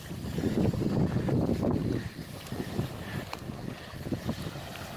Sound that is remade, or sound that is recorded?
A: recorded